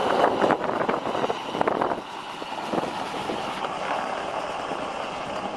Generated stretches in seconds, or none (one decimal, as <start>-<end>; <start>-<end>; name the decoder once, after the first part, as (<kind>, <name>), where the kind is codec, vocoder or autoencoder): 3.2-5.6 (vocoder, BigVGAN v2)